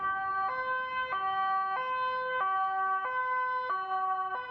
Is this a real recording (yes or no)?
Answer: yes